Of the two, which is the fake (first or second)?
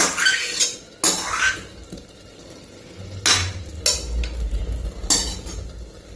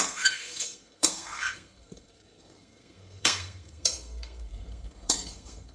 second